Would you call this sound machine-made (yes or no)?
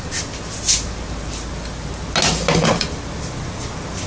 no